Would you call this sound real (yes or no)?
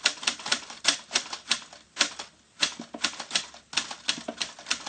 yes